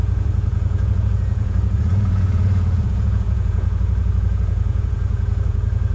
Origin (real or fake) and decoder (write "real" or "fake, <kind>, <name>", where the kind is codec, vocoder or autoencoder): fake, vocoder, Vocos